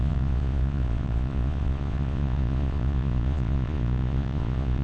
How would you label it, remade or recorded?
remade